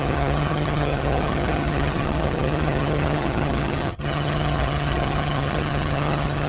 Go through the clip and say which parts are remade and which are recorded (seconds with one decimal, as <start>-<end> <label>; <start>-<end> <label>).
0.0-6.5 remade